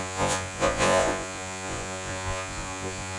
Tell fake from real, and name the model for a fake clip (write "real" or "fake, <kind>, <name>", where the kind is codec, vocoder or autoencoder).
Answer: fake, vocoder, Vocos